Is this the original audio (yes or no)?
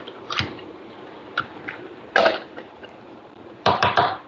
no